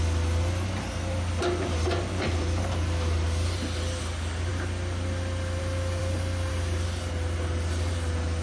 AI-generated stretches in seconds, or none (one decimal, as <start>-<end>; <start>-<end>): none